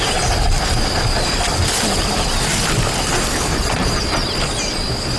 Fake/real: real